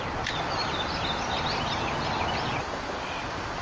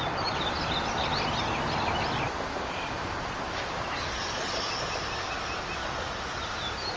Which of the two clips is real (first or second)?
second